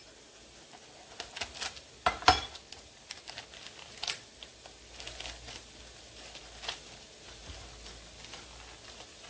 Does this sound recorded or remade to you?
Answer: recorded